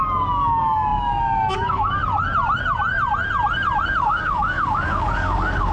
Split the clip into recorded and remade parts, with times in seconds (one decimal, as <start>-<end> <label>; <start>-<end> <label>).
0.0-2.0 remade; 2.0-4.0 recorded; 4.0-5.7 remade